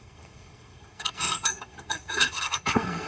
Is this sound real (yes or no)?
no